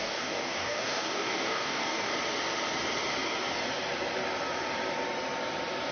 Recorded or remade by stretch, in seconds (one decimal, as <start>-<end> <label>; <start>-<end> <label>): 0.0-2.1 remade; 2.1-5.9 recorded